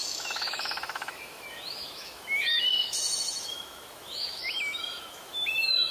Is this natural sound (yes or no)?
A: no